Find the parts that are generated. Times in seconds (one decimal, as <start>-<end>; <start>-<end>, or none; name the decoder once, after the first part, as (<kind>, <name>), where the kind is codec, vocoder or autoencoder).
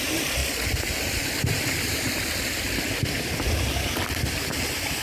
none